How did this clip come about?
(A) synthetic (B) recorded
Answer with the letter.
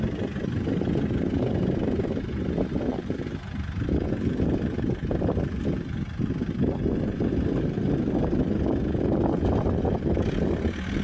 B